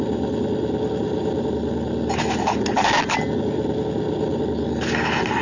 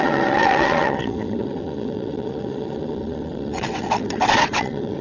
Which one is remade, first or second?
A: second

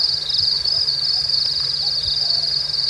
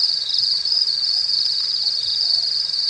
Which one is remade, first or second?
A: second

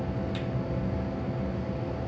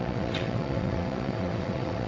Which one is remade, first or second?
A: second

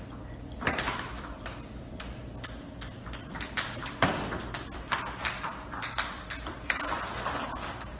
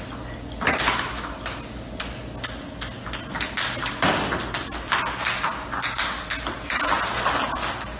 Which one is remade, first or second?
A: first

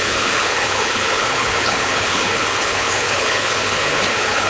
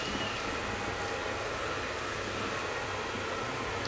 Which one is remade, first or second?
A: first